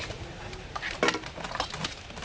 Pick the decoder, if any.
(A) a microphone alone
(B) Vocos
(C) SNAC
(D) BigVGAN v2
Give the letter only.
A